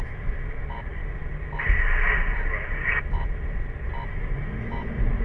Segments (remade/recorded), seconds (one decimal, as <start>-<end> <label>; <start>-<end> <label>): 0.0-1.0 remade; 1.0-4.1 recorded; 4.1-5.2 remade